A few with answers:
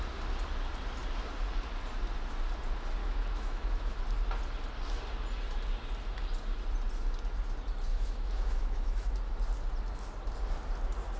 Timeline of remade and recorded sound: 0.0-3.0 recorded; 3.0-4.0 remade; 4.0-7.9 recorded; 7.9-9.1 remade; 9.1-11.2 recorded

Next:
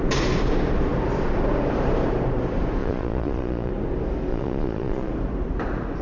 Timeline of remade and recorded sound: 0.0-2.8 recorded; 2.8-3.7 remade; 3.7-4.3 recorded; 4.3-5.1 remade; 5.1-6.0 recorded

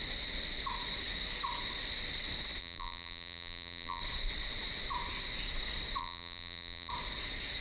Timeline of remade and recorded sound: 0.0-2.6 recorded; 2.6-4.0 remade; 4.0-6.0 recorded; 6.0-6.9 remade; 6.9-7.6 recorded

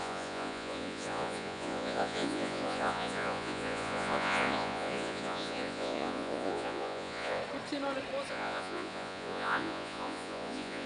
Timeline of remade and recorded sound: 0.0-7.4 remade; 7.4-8.3 recorded; 8.3-10.9 remade

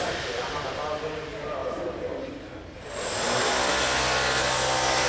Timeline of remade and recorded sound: 0.0-5.1 recorded

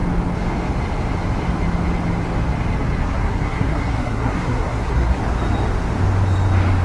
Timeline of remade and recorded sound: 0.0-3.0 recorded; 3.0-5.2 remade; 5.2-6.8 recorded

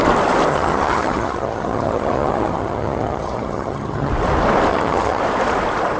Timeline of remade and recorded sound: 0.0-0.5 recorded; 0.5-4.1 remade; 4.1-4.7 recorded; 4.7-5.2 remade; 5.2-6.0 recorded

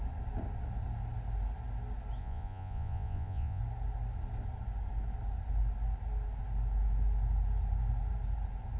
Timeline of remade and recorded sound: 0.0-2.2 recorded; 2.2-3.6 remade; 3.6-8.8 recorded